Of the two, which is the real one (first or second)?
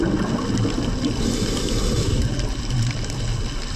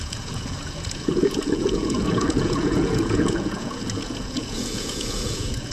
first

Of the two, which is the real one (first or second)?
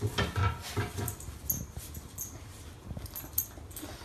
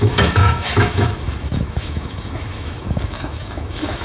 first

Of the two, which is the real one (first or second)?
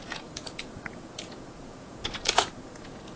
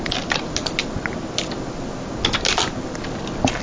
second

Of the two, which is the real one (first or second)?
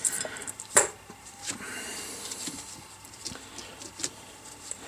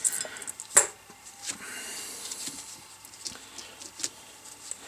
second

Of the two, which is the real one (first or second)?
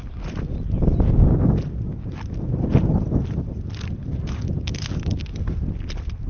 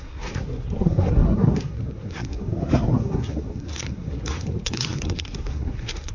first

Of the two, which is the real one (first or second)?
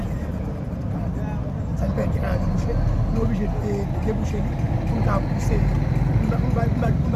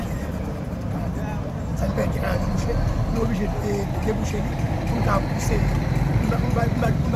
first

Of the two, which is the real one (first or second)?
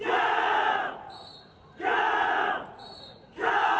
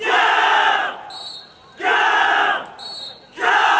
second